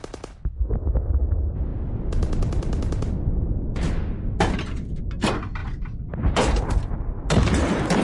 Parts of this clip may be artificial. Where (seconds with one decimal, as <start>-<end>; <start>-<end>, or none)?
none

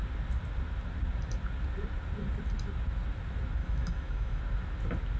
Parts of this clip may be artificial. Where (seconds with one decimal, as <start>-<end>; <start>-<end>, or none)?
3.6-4.4